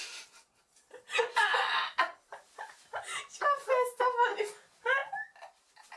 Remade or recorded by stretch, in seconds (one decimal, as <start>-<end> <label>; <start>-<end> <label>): 0.0-6.0 recorded